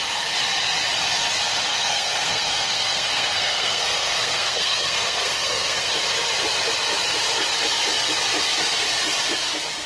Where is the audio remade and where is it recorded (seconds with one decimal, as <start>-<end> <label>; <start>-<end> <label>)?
0.0-1.7 recorded; 1.7-5.9 remade; 5.9-9.9 recorded